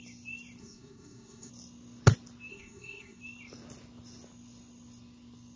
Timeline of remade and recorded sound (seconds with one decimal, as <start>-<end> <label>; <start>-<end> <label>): 0.0-0.6 recorded; 0.6-1.5 remade; 1.5-2.5 recorded; 2.5-3.2 remade; 3.2-5.6 recorded